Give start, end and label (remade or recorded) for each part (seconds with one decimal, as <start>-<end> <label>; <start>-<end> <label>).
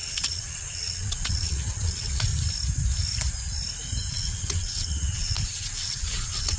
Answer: 0.0-2.3 remade; 2.3-4.1 recorded; 4.1-6.6 remade